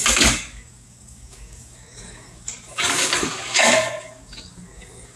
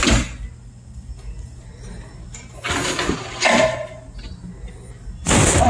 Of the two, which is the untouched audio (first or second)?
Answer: second